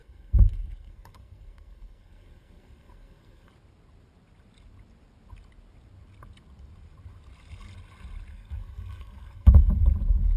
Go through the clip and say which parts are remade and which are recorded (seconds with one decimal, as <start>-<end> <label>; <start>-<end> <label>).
0.0-3.5 remade; 3.5-8.3 recorded; 8.3-9.7 remade; 9.7-10.4 recorded